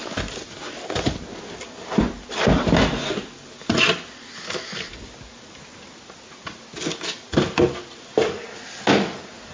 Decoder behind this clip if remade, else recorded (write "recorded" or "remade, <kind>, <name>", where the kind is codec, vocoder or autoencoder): recorded